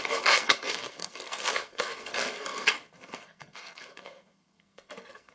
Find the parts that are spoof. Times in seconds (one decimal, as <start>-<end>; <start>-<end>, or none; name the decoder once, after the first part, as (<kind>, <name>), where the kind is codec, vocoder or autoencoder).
0.0-5.3 (codec, SNAC)